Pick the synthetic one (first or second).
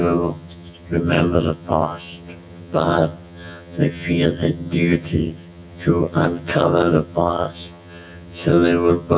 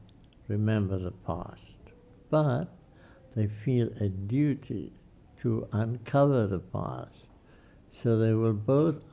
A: first